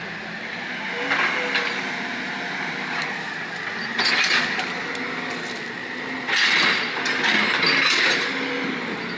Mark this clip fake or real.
real